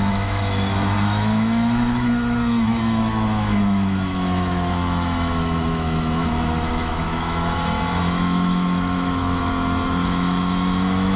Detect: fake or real fake